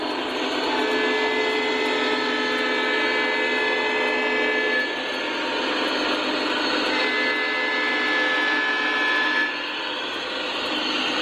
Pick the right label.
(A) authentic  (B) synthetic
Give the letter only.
A